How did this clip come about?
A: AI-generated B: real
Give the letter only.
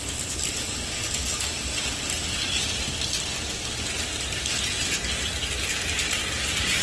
B